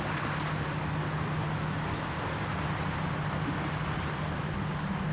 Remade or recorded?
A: recorded